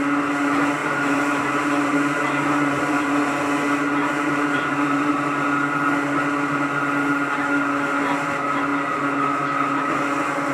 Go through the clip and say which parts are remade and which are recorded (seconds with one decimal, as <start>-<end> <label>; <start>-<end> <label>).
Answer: 0.0-0.8 recorded; 0.8-3.3 remade; 3.3-4.0 recorded; 4.0-5.1 remade; 5.1-10.5 recorded